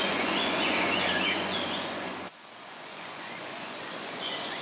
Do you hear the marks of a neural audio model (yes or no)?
yes